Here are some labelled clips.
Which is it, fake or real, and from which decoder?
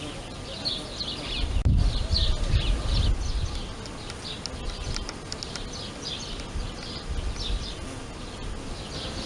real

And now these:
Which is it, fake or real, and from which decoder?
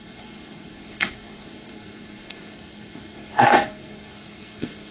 fake, codec, SNAC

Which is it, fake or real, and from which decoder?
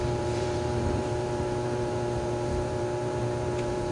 fake, vocoder, BigVGAN v2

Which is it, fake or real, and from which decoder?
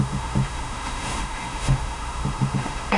fake, autoencoder, DAC-VAE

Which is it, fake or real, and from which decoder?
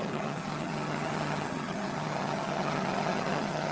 fake, vocoder, HiFi-GAN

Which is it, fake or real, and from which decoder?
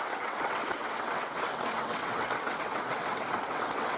fake, vocoder, WaveNeXt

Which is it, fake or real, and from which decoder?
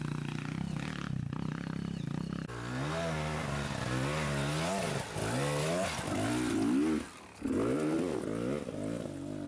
real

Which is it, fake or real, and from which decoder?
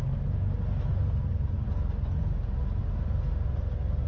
real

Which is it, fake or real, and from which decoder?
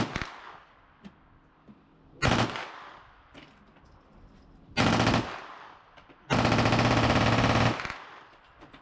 real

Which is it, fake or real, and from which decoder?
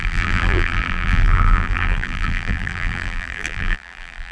fake, vocoder, BigVGAN v2